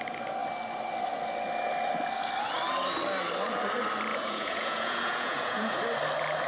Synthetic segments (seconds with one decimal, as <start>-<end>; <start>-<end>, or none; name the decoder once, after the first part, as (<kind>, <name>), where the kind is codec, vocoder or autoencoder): 4.1-5.8 (vocoder, Vocos)

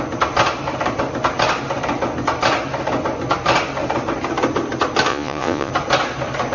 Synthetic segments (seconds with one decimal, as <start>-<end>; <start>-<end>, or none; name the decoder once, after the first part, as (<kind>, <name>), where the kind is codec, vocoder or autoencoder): 5.1-5.7 (vocoder, Vocos)

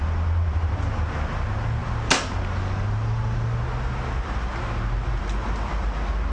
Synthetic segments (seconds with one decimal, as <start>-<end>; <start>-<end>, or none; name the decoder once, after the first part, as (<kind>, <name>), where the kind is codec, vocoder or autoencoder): none

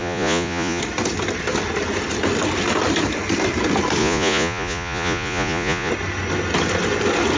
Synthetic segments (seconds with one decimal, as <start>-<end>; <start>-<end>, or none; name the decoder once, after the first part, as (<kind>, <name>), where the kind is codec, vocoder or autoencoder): 0.0-0.8 (vocoder, Vocos); 4.0-5.9

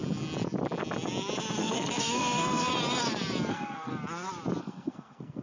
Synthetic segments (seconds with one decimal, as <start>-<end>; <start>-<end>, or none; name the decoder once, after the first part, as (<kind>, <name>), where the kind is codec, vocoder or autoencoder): 1.6-2.7 (codec, SNAC); 3.5-3.9; 4.6-5.4